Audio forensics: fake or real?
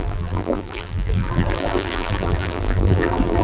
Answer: fake